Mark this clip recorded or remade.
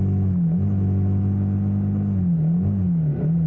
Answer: recorded